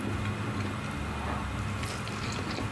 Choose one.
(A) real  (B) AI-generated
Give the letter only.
A